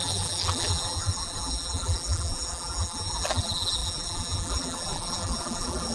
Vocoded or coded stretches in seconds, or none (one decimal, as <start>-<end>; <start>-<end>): 0.0-5.9